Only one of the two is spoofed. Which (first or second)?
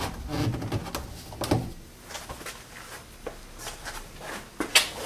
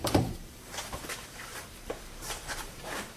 second